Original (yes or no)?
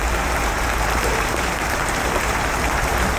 no